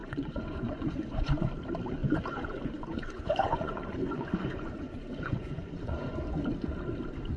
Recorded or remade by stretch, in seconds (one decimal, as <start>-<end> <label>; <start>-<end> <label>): 0.0-1.5 remade; 1.5-2.0 recorded; 2.0-6.4 remade; 6.4-7.4 recorded